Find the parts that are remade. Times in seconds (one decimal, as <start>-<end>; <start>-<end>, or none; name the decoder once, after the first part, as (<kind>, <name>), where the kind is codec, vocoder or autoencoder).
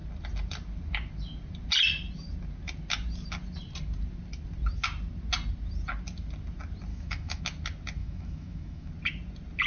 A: 6.9-7.4 (autoencoder, DAC-VAE); 8.0-8.9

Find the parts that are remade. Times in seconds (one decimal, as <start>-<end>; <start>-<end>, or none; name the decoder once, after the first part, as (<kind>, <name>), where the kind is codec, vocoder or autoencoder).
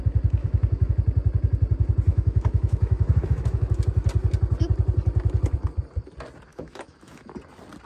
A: 0.4-0.9 (autoencoder, DAC-VAE); 2.1-3.8; 6.5-7.3